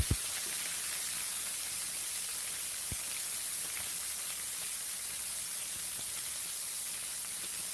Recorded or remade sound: recorded